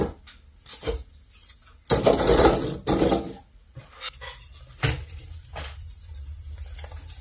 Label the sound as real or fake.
real